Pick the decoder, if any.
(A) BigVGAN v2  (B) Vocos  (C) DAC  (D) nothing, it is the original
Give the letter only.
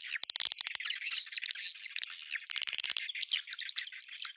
D